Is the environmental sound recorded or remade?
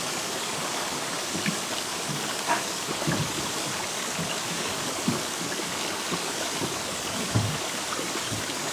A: remade